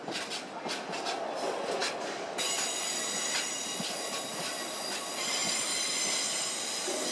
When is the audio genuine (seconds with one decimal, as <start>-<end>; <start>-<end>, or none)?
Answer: 0.0-7.1